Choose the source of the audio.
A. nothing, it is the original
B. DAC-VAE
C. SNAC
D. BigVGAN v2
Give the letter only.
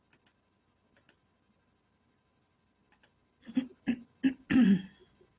A